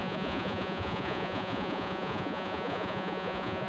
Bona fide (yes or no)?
no